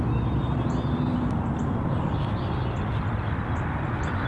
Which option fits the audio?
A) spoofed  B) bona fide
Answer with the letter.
B